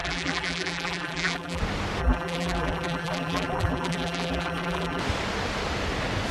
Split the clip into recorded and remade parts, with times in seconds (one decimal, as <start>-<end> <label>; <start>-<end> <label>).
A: 0.0-1.6 remade; 1.6-2.0 recorded; 2.0-5.0 remade; 5.0-6.3 recorded